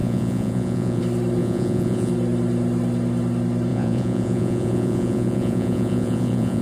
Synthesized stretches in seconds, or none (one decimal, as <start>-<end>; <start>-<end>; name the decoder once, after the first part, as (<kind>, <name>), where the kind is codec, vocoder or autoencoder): 0.0-1.0 (vocoder, Vocos); 1.4-2.1; 3.7-6.6